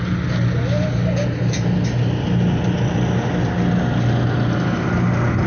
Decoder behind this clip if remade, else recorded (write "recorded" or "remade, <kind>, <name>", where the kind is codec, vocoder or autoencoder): recorded